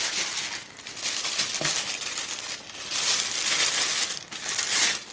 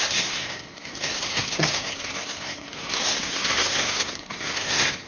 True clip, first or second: first